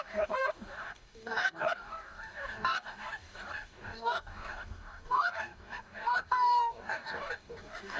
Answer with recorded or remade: remade